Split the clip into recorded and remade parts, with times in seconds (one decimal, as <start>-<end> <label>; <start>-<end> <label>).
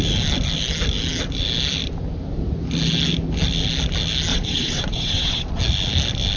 0.0-4.3 recorded; 4.3-5.6 remade; 5.6-6.4 recorded